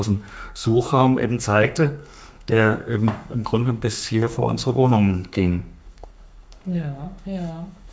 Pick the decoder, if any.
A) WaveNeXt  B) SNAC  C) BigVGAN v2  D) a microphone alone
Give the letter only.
B